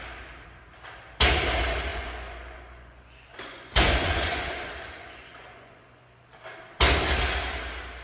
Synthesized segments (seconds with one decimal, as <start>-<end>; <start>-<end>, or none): 1.9-6.3